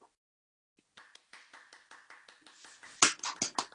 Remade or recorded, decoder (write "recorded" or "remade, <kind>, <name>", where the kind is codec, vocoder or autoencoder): recorded